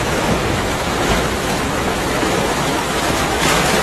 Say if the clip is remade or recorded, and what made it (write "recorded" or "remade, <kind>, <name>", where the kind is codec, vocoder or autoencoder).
remade, autoencoder, DAC-VAE